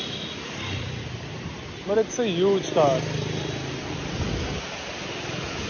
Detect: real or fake real